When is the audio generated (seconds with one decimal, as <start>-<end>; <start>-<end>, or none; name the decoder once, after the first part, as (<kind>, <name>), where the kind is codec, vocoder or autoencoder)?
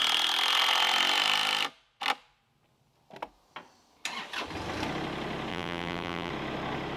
5.5-6.3 (vocoder, BigVGAN v2)